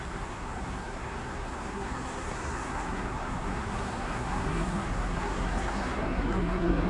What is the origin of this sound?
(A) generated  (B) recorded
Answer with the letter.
A